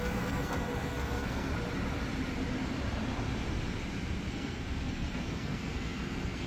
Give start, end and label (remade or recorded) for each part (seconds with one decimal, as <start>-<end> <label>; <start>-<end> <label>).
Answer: 0.0-1.5 remade; 1.5-4.3 recorded; 4.3-6.5 remade